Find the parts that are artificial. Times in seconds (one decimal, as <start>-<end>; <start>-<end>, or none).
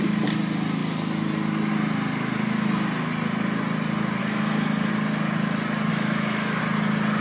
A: 4.2-4.9; 5.9-6.6